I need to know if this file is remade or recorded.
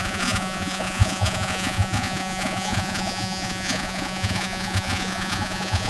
remade